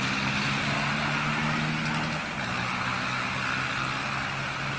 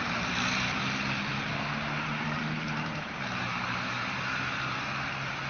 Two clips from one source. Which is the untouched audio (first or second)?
first